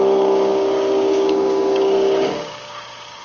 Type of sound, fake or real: fake